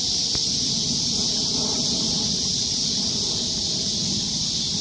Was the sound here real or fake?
fake